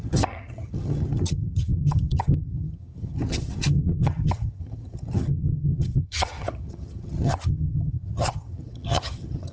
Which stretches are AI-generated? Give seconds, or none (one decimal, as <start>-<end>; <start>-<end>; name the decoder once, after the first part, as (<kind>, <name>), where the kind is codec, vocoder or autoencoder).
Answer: 0.0-9.5 (vocoder, HiFi-GAN)